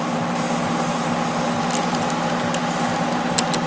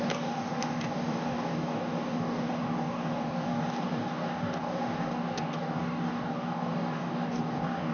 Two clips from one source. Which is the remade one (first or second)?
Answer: second